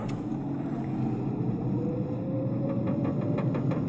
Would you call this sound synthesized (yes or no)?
no